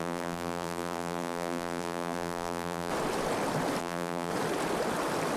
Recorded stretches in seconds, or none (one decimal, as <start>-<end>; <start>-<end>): 2.9-3.8; 4.3-5.4